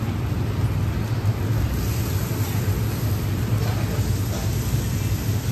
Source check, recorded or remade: recorded